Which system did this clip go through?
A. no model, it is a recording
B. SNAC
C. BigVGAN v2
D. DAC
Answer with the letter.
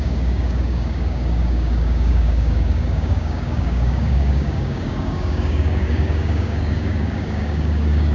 D